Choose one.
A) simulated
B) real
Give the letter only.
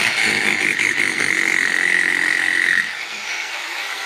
A